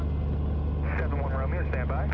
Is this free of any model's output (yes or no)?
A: yes